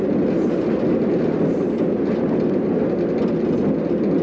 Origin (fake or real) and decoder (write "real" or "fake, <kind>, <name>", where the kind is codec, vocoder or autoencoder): real